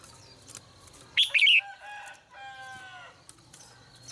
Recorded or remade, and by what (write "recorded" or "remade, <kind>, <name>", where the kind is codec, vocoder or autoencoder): recorded